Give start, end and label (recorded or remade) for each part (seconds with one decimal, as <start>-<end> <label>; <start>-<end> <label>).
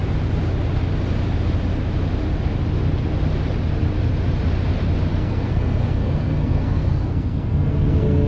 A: 0.0-5.1 recorded; 5.1-8.3 remade